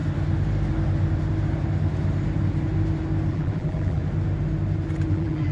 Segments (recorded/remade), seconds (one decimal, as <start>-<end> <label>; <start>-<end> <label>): 0.0-3.3 recorded; 3.3-4.0 remade; 4.0-5.1 recorded; 5.1-5.5 remade